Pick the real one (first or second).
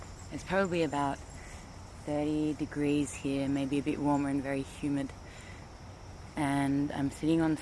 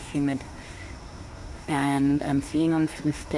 first